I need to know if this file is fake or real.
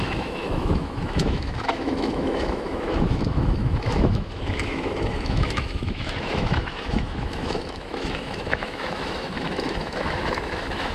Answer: fake